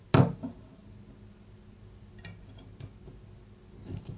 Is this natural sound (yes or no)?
yes